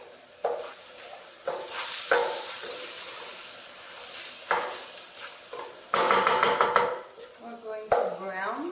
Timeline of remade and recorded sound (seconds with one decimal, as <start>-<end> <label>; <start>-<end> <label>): 0.0-8.7 recorded